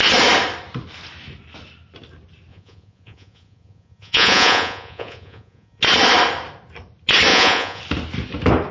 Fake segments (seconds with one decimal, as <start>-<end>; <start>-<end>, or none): 2.5-5.8; 7.3-7.8